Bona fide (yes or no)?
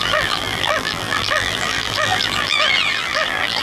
no